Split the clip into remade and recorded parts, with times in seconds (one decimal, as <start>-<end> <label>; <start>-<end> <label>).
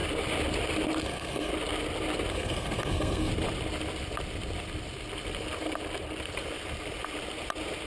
0.0-1.0 recorded; 1.0-1.5 remade; 1.5-2.3 recorded; 2.3-3.3 remade; 3.3-7.9 recorded